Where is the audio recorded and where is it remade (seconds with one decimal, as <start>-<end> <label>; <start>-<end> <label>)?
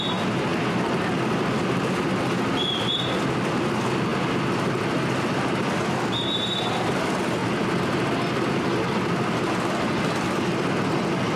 0.0-0.5 recorded; 0.5-1.2 remade; 1.2-7.4 recorded; 7.4-10.5 remade; 10.5-11.4 recorded